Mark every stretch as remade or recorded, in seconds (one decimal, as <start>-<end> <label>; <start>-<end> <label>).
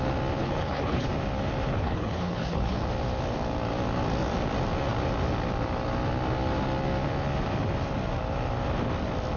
0.0-0.4 recorded; 0.4-1.1 remade; 1.1-1.7 recorded; 1.7-2.8 remade; 2.8-9.4 recorded